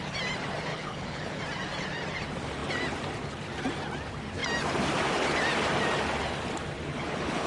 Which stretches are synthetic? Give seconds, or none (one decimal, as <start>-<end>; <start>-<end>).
0.7-1.4; 6.9-7.5